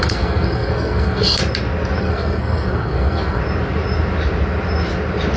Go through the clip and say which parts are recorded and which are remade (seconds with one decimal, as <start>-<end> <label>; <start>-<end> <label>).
0.0-1.4 remade; 1.4-2.0 recorded; 2.0-3.4 remade; 3.4-5.4 recorded

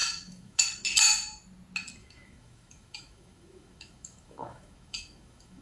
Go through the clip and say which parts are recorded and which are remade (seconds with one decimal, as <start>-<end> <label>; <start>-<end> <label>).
0.0-0.6 remade; 0.6-2.0 recorded; 2.0-5.6 remade